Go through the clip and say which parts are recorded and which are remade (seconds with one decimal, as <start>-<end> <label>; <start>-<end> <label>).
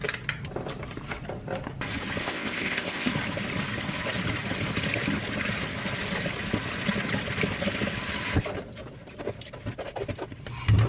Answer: 0.0-2.2 recorded; 2.2-3.1 remade; 3.1-10.9 recorded